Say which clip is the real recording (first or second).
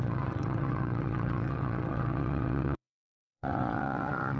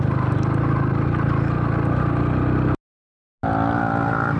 second